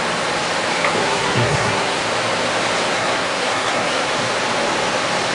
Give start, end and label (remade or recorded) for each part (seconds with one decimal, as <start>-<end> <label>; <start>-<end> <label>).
0.0-1.0 recorded; 1.0-2.0 remade; 2.0-2.9 recorded; 2.9-4.1 remade; 4.1-5.3 recorded